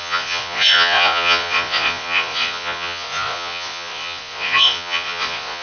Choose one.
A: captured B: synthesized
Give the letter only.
B